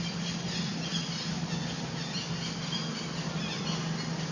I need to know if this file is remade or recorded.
recorded